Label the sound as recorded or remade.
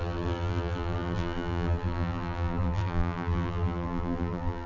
remade